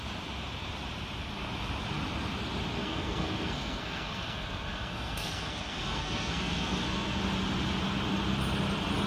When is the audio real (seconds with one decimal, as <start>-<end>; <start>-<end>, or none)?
0.0-2.8; 7.2-9.1